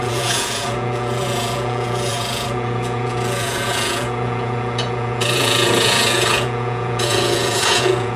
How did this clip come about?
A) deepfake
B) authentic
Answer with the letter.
A